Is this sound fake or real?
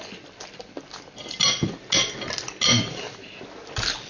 real